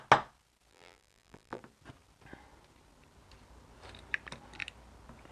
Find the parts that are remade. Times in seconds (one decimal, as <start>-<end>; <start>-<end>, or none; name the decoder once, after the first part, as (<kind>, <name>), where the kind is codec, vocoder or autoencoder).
0.7-1.6 (vocoder, BigVGAN v2)